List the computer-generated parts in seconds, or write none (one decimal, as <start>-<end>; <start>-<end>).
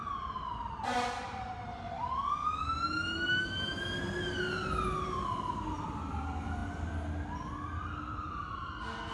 2.4-4.0